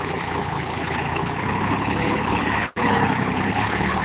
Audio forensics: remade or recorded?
remade